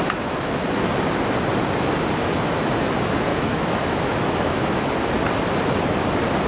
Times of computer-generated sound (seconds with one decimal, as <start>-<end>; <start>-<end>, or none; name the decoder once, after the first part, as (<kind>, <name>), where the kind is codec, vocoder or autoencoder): 3.3-4.9 (autoencoder, DAC-VAE)